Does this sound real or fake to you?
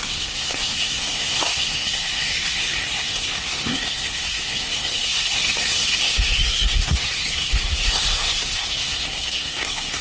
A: fake